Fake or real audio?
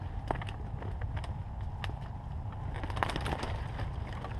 real